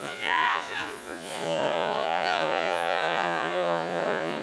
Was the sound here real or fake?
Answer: fake